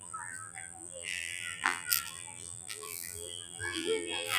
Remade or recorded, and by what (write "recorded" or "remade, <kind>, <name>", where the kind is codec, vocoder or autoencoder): remade, vocoder, BigVGAN v2